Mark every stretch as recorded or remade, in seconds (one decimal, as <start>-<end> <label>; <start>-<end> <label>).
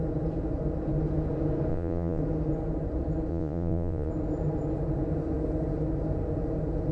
0.0-1.7 recorded; 1.7-2.2 remade; 2.2-3.3 recorded; 3.3-4.1 remade; 4.1-6.9 recorded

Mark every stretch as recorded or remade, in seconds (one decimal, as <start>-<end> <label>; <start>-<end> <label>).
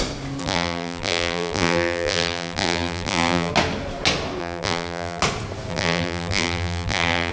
0.0-0.4 recorded; 0.4-3.5 remade; 3.5-4.4 recorded; 4.4-5.2 remade; 5.2-5.7 recorded; 5.7-7.3 remade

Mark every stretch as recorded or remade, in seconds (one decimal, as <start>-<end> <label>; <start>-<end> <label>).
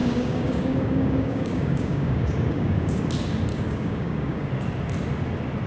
0.0-3.0 remade; 3.0-3.5 recorded; 3.5-4.5 remade; 4.5-5.7 recorded